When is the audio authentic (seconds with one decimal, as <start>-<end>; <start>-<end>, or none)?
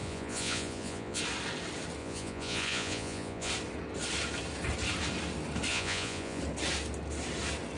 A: 1.2-2.0; 3.5-5.7; 6.4-7.8